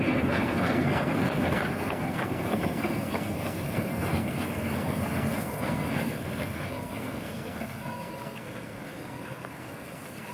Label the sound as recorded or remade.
remade